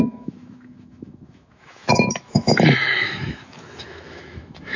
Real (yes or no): no